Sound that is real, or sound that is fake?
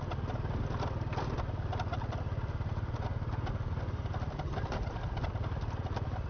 real